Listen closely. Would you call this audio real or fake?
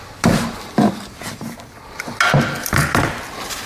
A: real